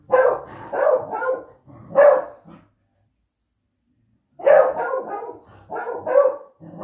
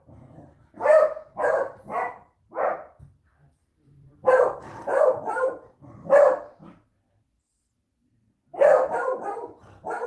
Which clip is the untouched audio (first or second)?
first